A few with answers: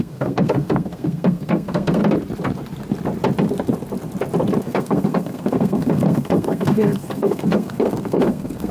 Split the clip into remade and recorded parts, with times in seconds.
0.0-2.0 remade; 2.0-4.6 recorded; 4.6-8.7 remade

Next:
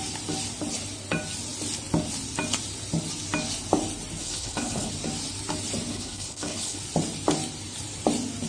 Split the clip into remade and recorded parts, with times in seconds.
0.0-4.2 recorded; 4.2-4.9 remade; 4.9-5.9 recorded; 5.9-6.8 remade; 6.8-8.5 recorded

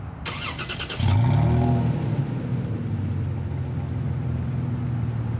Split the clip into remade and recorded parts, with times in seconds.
0.0-5.4 recorded